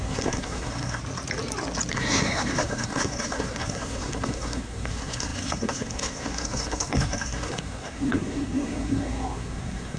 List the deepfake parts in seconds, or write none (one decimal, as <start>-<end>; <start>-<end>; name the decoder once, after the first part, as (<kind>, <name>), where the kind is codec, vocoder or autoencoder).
0.0-1.0 (codec, SNAC); 1.9-10.0